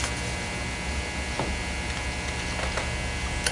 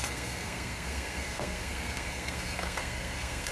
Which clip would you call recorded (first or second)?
first